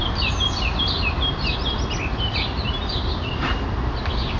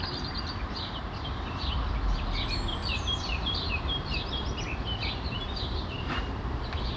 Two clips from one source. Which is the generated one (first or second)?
second